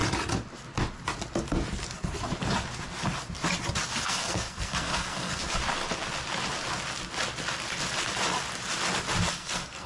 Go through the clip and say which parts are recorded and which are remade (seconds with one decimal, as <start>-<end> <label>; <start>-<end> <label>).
0.0-4.0 recorded; 4.0-5.6 remade; 5.6-9.3 recorded; 9.3-9.9 remade